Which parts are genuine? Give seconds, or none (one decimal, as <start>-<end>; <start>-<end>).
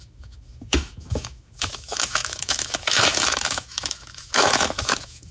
none